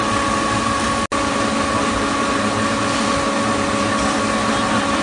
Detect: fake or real real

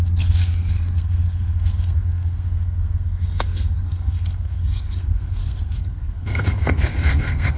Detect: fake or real fake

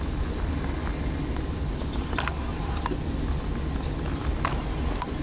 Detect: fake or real real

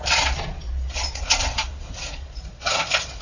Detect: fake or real fake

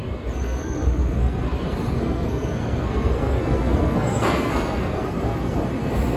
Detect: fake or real fake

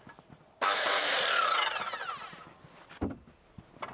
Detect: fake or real real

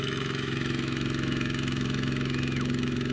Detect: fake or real fake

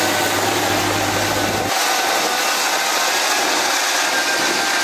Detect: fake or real real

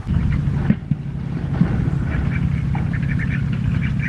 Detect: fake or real real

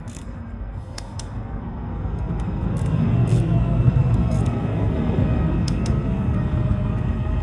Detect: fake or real fake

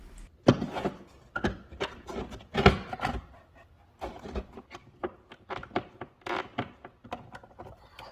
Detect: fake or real real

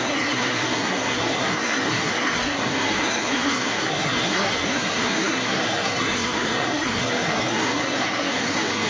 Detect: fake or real fake